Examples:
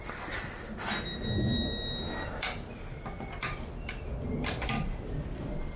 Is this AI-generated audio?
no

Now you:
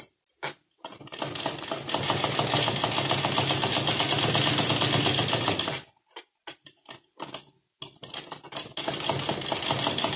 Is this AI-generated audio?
no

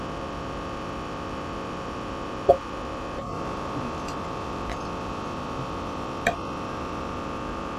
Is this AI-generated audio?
no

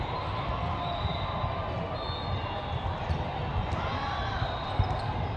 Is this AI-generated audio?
no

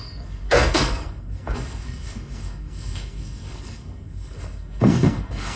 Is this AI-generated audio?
yes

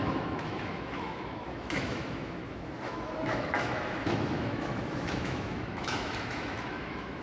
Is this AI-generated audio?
yes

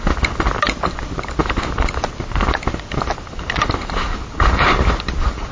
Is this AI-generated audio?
no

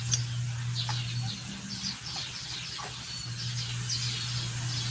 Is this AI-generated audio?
no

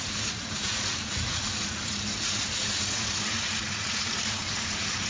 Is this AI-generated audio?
yes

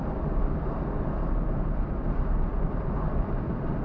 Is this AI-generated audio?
yes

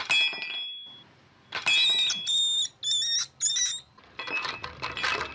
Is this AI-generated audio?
no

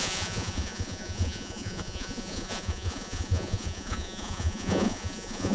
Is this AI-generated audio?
yes